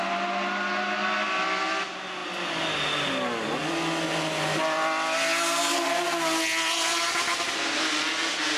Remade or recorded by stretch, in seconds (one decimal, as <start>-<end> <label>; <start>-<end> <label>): 0.0-8.6 recorded